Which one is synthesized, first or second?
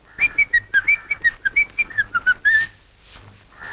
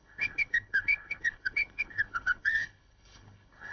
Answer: second